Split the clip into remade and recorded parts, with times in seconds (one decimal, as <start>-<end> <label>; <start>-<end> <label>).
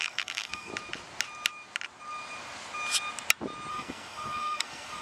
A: 0.0-0.7 remade; 0.7-3.7 recorded; 3.7-5.0 remade